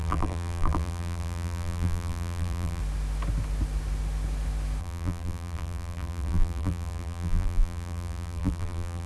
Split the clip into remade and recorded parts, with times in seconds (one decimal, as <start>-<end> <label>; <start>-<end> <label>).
0.0-2.8 remade; 2.8-4.8 recorded; 4.8-9.1 remade